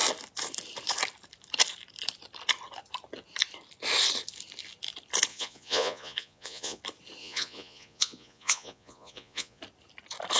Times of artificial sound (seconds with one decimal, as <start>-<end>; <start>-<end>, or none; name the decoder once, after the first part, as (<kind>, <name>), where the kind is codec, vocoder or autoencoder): 5.3-6.8 (vocoder, Vocos); 7.2-9.6